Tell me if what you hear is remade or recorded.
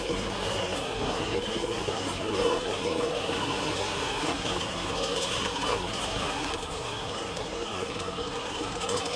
remade